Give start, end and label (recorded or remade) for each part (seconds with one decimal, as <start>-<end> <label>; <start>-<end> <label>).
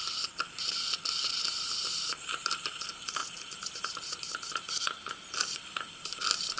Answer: 0.0-1.1 recorded; 1.1-6.6 remade